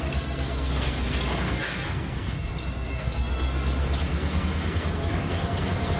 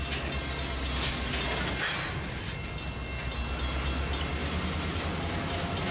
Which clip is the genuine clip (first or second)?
second